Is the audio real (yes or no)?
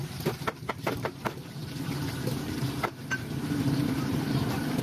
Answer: no